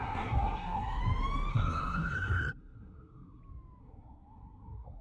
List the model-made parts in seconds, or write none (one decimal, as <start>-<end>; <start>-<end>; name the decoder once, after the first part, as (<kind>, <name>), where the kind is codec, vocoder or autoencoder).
0.0-1.0 (codec, SNAC); 1.5-3.4; 3.8-5.0